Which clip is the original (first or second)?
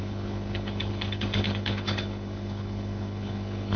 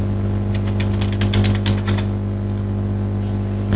second